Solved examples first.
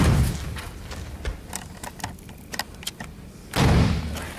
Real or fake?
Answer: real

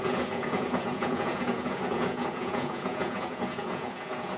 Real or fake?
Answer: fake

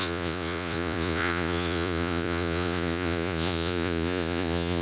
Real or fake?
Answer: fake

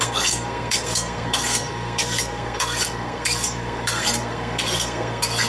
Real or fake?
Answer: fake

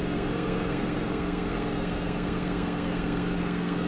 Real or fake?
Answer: fake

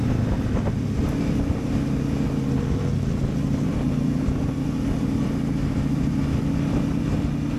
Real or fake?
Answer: real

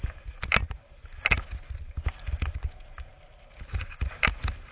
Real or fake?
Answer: real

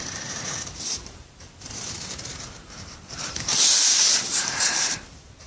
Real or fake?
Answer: fake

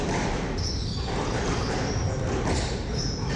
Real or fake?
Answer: real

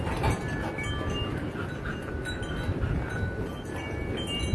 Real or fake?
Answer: real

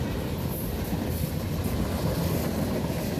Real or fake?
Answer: real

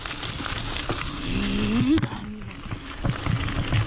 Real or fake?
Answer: real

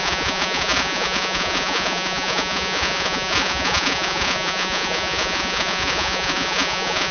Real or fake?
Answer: fake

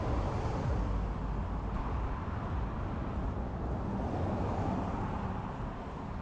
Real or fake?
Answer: real